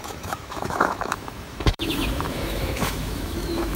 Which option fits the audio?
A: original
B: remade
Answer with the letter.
B